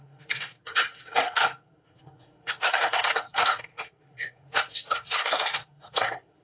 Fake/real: fake